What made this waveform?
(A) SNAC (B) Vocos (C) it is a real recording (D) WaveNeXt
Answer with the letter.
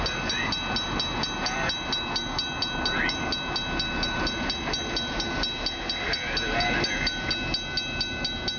C